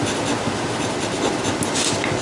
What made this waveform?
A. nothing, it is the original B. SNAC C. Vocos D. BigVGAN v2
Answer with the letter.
A